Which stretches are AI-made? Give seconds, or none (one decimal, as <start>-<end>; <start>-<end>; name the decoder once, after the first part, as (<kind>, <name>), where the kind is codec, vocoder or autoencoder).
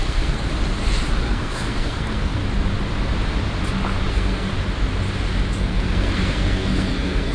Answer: 0.0-0.5 (codec, SNAC); 1.2-2.4; 4.1-4.5; 5.5-7.3